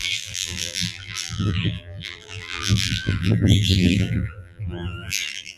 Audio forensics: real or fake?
fake